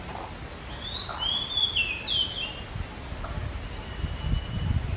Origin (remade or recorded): recorded